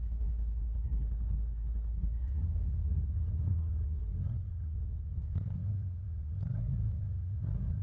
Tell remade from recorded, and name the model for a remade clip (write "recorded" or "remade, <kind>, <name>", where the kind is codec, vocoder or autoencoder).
remade, codec, SNAC